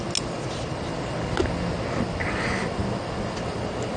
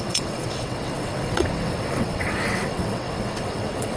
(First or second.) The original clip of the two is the first